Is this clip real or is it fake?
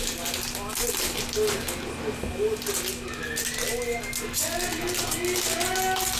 real